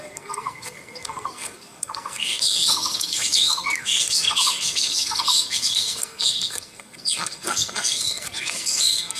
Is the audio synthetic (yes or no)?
yes